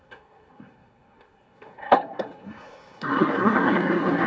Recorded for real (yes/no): no